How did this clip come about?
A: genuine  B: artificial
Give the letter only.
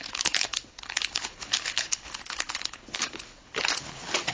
B